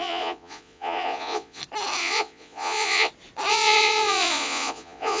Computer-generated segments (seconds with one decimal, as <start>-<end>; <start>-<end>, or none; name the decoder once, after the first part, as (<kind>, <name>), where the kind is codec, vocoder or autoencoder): 0.0-1.6 (vocoder, Vocos); 2.0-3.1; 3.5-5.2